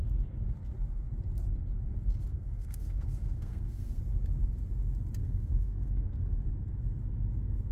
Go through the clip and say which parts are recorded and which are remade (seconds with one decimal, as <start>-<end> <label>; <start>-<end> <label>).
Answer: 0.0-2.3 recorded; 2.3-4.0 remade; 4.0-5.2 recorded; 5.2-6.2 remade; 6.2-7.7 recorded